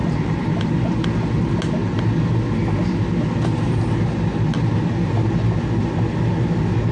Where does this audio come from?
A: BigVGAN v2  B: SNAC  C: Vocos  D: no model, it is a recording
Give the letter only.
D